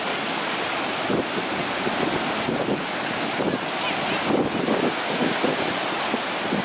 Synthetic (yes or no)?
no